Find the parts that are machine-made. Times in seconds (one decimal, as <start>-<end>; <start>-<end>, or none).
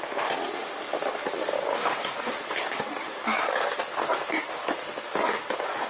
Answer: 1.7-2.3